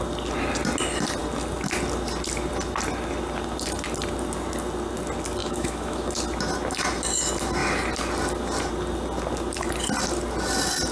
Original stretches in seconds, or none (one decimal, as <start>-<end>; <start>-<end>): 0.0-5.4; 6.1-10.9